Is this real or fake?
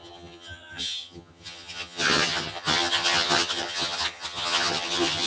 fake